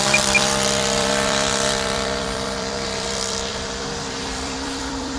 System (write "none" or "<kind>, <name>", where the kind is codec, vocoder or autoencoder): vocoder, BigVGAN v2